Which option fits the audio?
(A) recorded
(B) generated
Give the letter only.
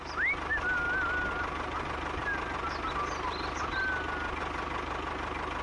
A